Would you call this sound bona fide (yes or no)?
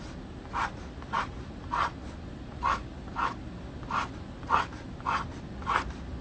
yes